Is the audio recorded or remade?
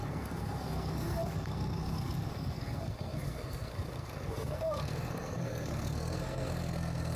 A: remade